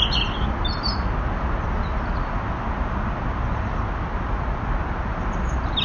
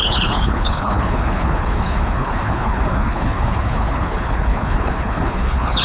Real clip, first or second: first